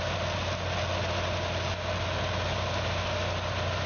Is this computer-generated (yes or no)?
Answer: no